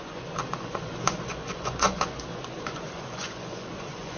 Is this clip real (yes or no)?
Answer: no